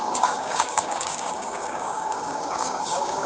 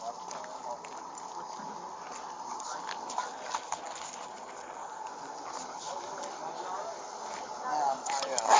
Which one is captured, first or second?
second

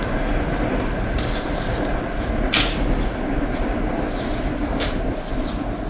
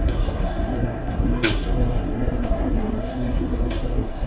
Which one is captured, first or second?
first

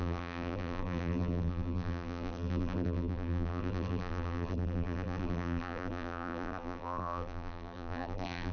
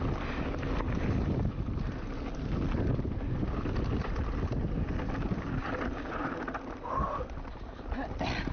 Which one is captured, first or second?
second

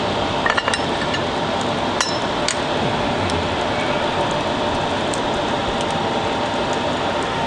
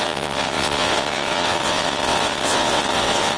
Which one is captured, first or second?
first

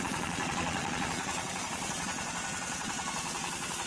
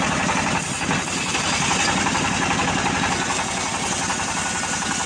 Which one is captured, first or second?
second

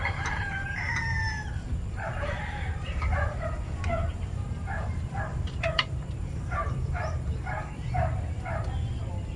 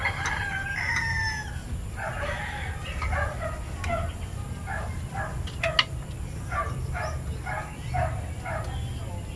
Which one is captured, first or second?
second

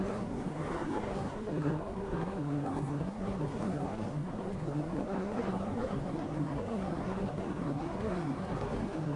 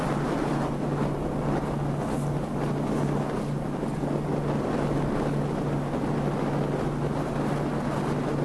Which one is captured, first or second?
second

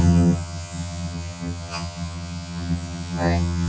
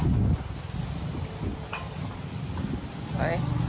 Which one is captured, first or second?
second